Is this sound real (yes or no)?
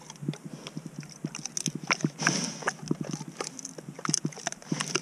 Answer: yes